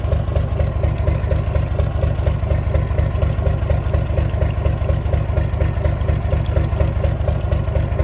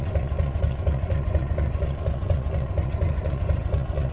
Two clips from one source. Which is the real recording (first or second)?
first